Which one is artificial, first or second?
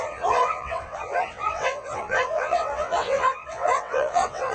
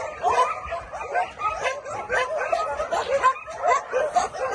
first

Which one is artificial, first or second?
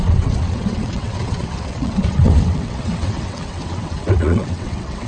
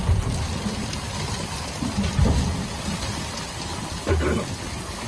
first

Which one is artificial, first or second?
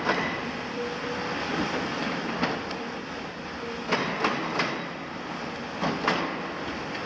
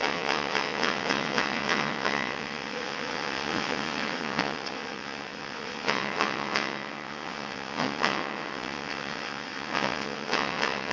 second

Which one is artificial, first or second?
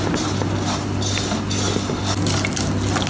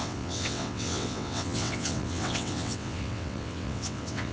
second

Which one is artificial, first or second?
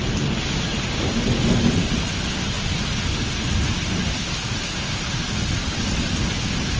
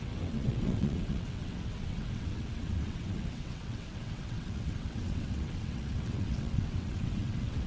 second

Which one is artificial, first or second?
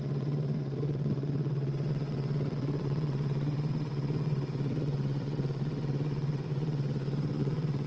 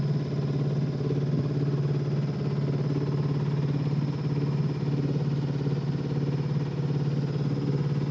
first